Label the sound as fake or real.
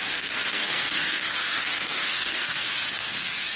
fake